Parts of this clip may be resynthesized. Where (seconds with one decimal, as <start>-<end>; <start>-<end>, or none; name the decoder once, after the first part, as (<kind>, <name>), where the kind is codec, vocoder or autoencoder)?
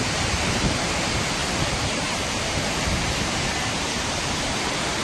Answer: 0.0-5.0 (vocoder, BigVGAN v2)